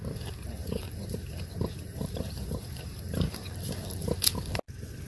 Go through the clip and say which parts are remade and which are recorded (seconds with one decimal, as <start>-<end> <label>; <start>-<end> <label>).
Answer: 0.0-0.6 recorded; 0.6-3.7 remade; 3.7-5.1 recorded